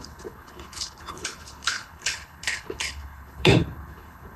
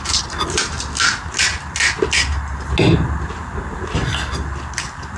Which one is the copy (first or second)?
first